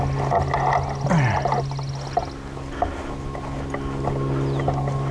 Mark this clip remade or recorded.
recorded